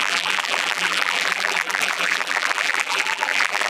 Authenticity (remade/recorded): remade